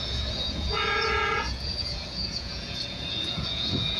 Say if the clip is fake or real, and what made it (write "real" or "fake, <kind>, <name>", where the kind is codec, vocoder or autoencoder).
fake, vocoder, Vocos